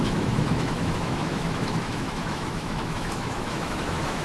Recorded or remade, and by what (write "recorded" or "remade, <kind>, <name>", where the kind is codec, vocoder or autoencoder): remade, autoencoder, DAC-VAE